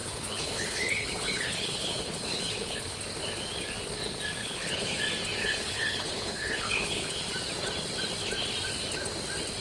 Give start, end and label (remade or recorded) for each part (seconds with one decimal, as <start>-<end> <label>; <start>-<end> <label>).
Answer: 0.0-3.0 remade; 3.0-4.4 recorded; 4.4-5.0 remade; 5.0-5.4 recorded; 5.4-7.2 remade; 7.2-9.6 recorded

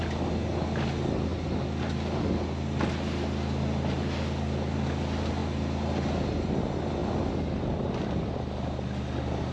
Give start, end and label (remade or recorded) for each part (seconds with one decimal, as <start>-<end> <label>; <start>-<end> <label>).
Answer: 0.0-9.5 recorded

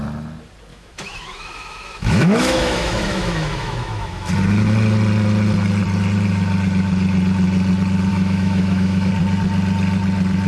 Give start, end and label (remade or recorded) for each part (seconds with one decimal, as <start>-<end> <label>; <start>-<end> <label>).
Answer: 0.0-0.7 recorded; 0.7-4.3 remade; 4.3-8.1 recorded; 8.1-9.1 remade; 9.1-10.5 recorded

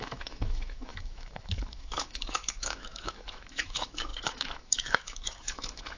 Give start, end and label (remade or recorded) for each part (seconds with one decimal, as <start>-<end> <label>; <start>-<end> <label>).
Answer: 0.0-6.0 remade

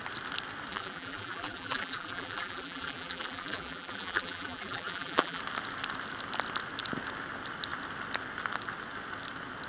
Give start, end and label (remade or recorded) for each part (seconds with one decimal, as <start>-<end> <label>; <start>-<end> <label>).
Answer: 0.0-0.7 recorded; 0.7-5.4 remade; 5.4-9.7 recorded

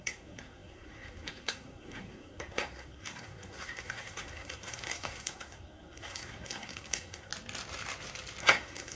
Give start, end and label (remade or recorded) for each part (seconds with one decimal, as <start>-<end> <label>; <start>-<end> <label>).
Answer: 0.0-7.3 remade; 7.3-8.4 recorded; 8.4-9.0 remade

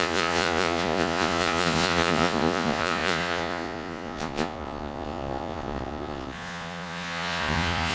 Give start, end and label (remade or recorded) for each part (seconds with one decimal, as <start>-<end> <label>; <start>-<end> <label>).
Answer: 0.0-7.9 remade